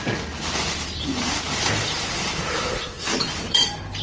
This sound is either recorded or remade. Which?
remade